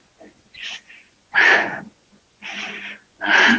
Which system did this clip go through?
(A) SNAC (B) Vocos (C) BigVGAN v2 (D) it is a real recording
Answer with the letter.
B